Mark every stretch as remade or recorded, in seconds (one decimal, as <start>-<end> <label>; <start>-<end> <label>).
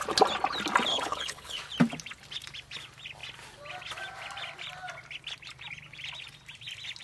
0.0-0.9 recorded; 0.9-1.6 remade; 1.6-7.0 recorded